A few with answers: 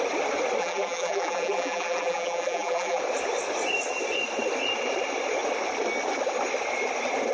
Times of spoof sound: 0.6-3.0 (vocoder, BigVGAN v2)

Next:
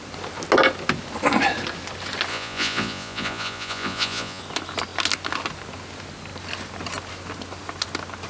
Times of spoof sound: 2.3-4.4 (vocoder, Vocos)

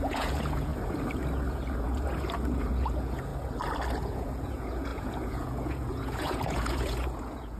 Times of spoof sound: 0.0-0.7 (vocoder, Vocos); 1.5-3.3; 4.0-7.6

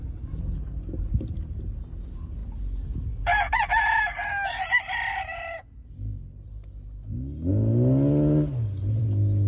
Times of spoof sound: none